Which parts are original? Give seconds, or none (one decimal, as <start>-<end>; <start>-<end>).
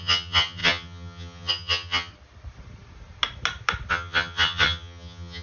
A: 2.1-3.9